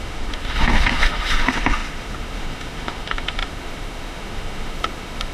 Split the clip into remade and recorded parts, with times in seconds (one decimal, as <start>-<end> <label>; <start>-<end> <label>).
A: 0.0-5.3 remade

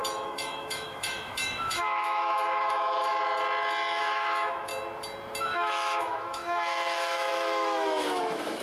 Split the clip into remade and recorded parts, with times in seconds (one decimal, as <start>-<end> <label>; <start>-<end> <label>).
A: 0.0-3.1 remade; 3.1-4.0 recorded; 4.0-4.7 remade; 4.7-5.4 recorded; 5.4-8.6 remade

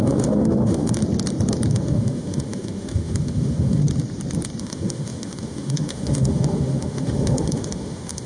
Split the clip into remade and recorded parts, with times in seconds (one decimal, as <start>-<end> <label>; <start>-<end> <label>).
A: 0.0-1.0 remade; 1.0-1.7 recorded; 1.7-3.8 remade; 3.8-4.6 recorded; 4.6-8.3 remade

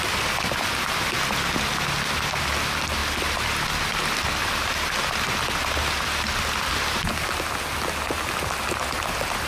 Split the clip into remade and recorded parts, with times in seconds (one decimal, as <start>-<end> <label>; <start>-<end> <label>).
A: 0.0-9.5 recorded

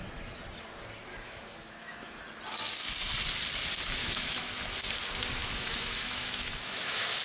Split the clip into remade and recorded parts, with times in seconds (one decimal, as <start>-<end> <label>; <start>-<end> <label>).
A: 0.0-1.1 recorded; 1.1-2.2 remade; 2.2-4.0 recorded; 4.0-4.5 remade; 4.5-5.4 recorded; 5.4-7.2 remade